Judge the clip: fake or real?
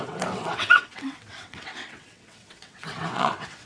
fake